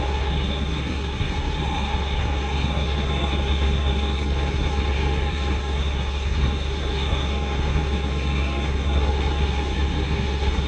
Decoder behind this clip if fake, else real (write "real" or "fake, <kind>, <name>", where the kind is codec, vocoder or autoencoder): fake, codec, SNAC